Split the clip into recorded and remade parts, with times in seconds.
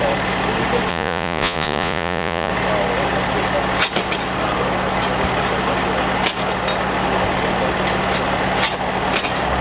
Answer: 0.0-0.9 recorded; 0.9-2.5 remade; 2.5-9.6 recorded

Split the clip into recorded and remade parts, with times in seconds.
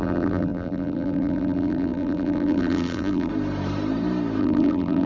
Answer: 0.0-3.3 remade; 3.3-4.4 recorded; 4.4-5.1 remade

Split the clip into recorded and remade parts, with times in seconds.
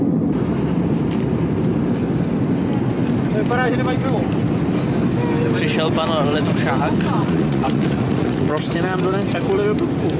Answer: 0.0-7.2 recorded; 7.2-8.5 remade; 8.5-10.2 recorded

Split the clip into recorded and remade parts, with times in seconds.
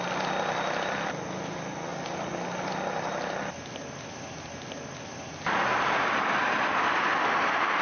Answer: 0.0-7.8 recorded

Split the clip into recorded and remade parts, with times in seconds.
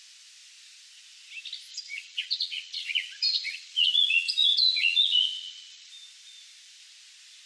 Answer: 0.0-1.7 recorded; 1.7-5.9 remade; 5.9-7.5 recorded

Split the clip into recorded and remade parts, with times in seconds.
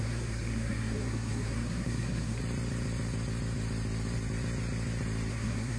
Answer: 0.0-2.4 remade; 2.4-5.3 recorded; 5.3-5.8 remade